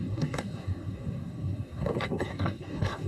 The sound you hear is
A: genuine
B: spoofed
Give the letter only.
B